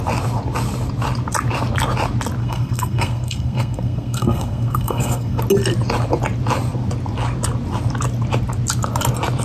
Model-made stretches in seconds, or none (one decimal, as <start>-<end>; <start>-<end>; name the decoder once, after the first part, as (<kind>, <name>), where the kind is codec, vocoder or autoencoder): 2.4-5.4 (codec, SNAC)